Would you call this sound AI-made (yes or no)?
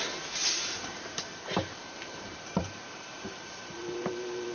yes